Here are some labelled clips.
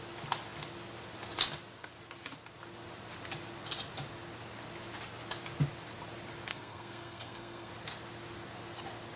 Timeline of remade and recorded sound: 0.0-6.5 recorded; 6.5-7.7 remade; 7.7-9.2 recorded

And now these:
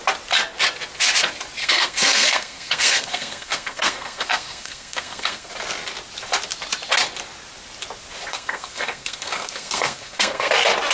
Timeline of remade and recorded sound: 0.0-1.6 recorded; 1.6-5.5 remade; 5.5-8.3 recorded; 8.3-10.5 remade; 10.5-10.9 recorded

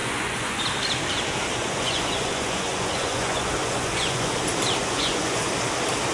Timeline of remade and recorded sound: 0.0-0.6 remade; 0.6-1.6 recorded; 1.6-4.3 remade; 4.3-4.8 recorded; 4.8-5.5 remade; 5.5-6.1 recorded

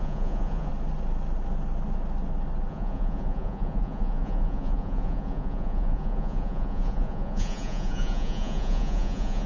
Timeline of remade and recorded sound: 0.0-0.7 remade; 0.7-2.7 recorded; 2.7-9.5 remade

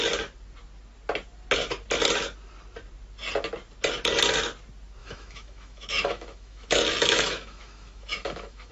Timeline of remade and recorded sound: 0.0-5.0 recorded; 5.0-8.7 remade

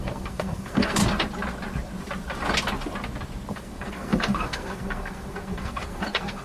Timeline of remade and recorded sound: 0.0-1.0 remade; 1.0-3.5 recorded; 3.5-6.4 remade